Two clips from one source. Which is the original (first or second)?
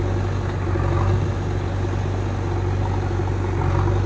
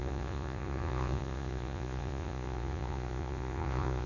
first